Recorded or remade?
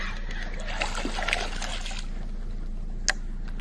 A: recorded